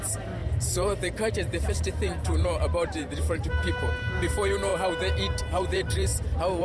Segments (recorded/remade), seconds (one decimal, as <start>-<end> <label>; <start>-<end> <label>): 0.0-4.7 remade; 4.7-5.4 recorded; 5.4-6.1 remade; 6.1-6.6 recorded